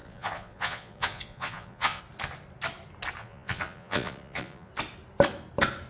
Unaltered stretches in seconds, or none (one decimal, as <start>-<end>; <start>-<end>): 2.0-3.2; 4.7-5.9